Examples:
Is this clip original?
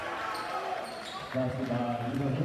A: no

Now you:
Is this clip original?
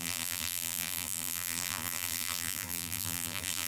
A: no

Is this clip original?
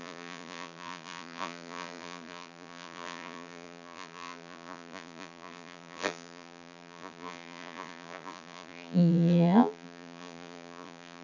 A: no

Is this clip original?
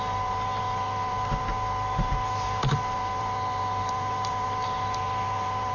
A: no